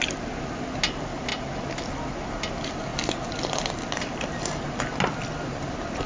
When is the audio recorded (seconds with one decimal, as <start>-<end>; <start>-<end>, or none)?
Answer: 0.0-6.1